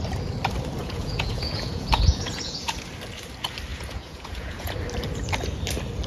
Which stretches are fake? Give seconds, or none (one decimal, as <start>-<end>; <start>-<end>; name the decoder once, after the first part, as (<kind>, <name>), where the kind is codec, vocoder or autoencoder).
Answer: 0.8-2.9 (vocoder, Vocos); 3.7-4.7